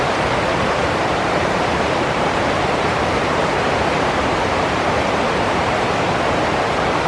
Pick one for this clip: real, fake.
fake